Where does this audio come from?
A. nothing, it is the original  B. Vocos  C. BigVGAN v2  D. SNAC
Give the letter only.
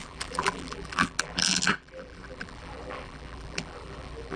C